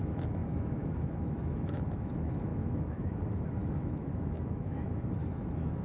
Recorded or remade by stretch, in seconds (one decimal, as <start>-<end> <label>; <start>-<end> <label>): 0.0-5.8 remade